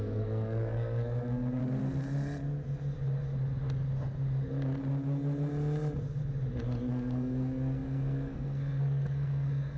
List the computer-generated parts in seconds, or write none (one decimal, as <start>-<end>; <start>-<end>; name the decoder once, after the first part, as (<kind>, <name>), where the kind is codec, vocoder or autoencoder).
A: 0.0-1.6 (codec, SNAC); 6.9-9.8